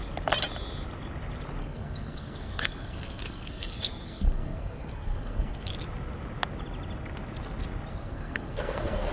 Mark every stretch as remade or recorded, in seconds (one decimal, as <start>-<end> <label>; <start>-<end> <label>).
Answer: 0.0-1.6 recorded; 1.6-5.7 remade; 5.7-7.9 recorded; 7.9-9.1 remade